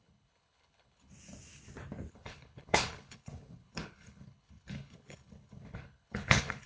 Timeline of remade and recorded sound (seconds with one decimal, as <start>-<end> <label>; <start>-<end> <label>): 0.0-1.1 remade; 1.1-2.1 recorded; 2.1-6.7 remade

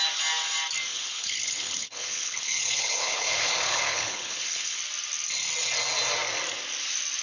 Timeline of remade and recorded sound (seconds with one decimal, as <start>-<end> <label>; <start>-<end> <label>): 0.0-0.9 recorded; 0.9-4.8 remade; 4.8-7.2 recorded

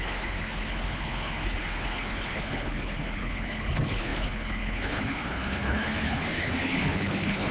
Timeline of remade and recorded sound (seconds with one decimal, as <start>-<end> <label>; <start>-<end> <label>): 0.0-7.5 remade

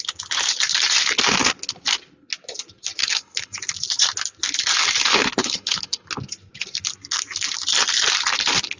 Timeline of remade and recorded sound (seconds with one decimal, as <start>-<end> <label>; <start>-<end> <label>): 0.0-3.0 recorded; 3.0-3.6 remade; 3.6-5.4 recorded; 5.4-6.1 remade; 6.1-8.8 recorded

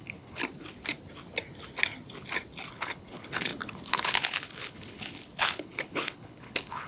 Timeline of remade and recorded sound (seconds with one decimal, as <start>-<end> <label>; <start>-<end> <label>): 0.0-0.4 remade; 0.4-2.7 recorded; 2.7-6.9 remade

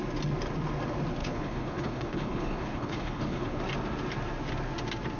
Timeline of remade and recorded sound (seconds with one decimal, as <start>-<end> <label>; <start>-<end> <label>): 0.0-1.2 recorded; 1.2-3.6 remade; 3.6-5.2 recorded

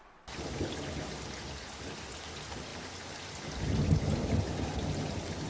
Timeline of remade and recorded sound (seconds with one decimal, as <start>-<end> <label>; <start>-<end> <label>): 0.0-5.5 recorded

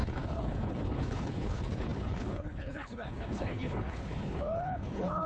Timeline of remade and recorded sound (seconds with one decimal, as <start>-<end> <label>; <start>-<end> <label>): 0.0-5.3 remade